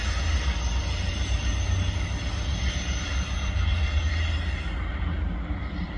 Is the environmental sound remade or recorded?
recorded